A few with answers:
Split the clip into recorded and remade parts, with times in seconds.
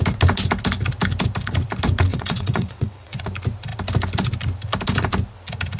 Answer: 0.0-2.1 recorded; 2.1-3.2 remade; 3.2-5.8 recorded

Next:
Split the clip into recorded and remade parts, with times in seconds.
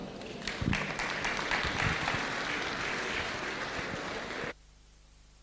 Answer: 0.0-5.4 recorded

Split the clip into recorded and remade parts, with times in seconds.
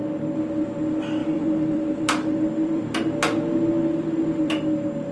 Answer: 0.0-1.2 recorded; 1.2-2.8 remade; 2.8-3.8 recorded; 3.8-4.5 remade; 4.5-5.1 recorded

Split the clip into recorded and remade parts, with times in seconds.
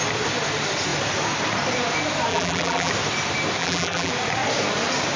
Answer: 0.0-2.3 recorded; 2.3-2.9 remade; 2.9-3.6 recorded; 3.6-4.1 remade; 4.1-5.2 recorded